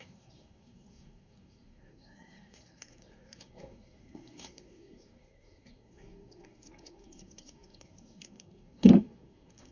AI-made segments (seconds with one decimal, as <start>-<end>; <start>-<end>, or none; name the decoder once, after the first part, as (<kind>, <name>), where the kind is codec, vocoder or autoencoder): 0.0-9.7 (codec, SNAC)